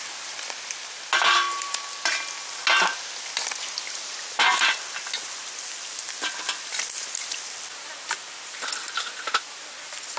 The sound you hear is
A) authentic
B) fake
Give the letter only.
A